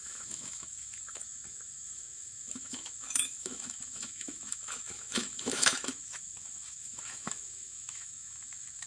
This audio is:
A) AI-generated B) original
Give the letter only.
A